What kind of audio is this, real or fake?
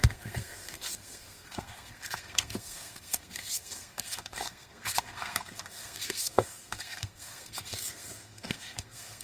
fake